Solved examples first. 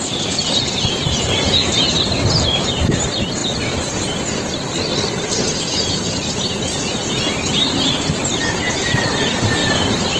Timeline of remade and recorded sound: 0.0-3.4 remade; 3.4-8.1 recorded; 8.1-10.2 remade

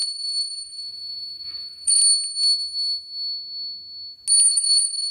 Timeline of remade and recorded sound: 0.0-2.0 remade; 2.0-4.5 recorded; 4.5-5.1 remade

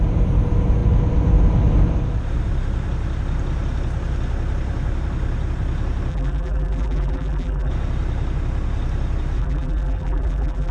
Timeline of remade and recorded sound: 0.0-6.1 recorded; 6.1-7.7 remade; 7.7-9.4 recorded; 9.4-10.7 remade

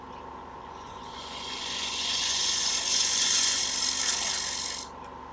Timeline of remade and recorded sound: 0.0-0.4 recorded; 0.4-3.6 remade; 3.6-5.3 recorded

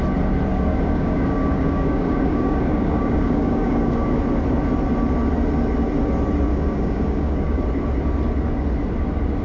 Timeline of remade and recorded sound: 0.0-0.5 recorded; 0.5-4.2 remade; 4.2-6.5 recorded; 6.5-7.6 remade; 7.6-9.4 recorded

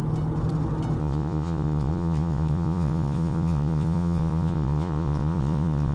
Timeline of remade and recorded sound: 0.0-1.0 recorded; 1.0-5.9 remade